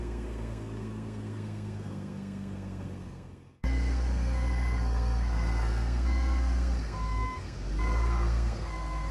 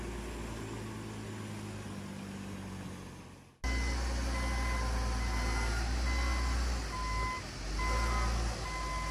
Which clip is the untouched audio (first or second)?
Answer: second